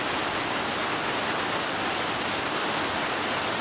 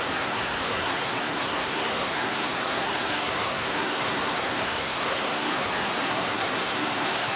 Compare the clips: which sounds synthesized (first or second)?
second